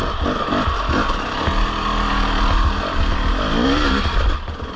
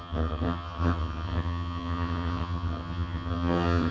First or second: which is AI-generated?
second